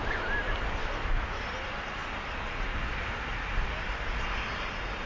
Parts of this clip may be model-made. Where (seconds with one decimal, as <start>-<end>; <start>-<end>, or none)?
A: 0.8-1.4